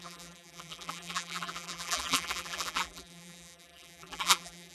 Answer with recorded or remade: remade